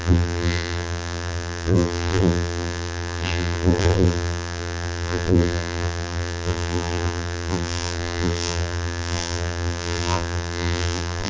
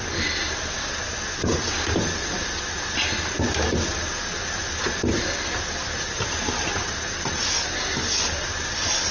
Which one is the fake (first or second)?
first